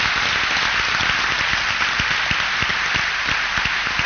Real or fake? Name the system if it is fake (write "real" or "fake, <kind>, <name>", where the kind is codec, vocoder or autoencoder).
real